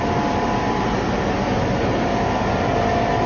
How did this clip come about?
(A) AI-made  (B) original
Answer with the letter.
B